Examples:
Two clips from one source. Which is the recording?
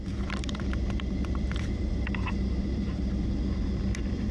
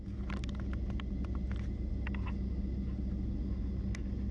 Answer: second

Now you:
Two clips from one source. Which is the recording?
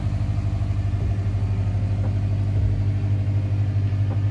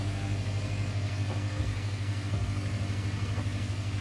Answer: first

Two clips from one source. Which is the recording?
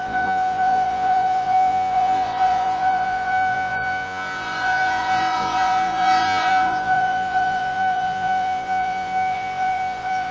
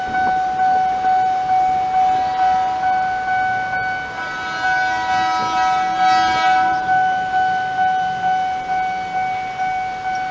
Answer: second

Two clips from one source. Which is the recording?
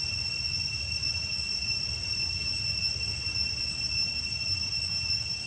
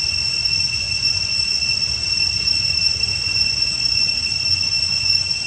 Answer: first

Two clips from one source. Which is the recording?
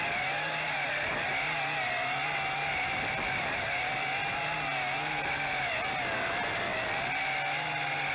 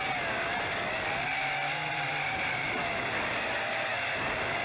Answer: first